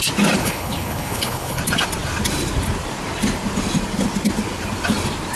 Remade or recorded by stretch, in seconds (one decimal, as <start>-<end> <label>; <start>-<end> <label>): 0.0-0.4 recorded; 0.4-1.6 remade; 1.6-5.4 recorded